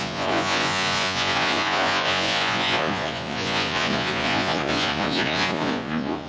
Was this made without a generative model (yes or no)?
no